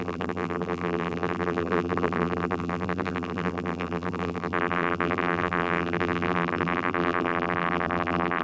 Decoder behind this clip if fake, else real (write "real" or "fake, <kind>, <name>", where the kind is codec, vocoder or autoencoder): fake, vocoder, BigVGAN v2